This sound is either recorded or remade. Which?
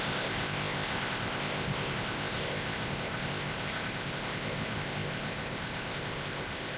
remade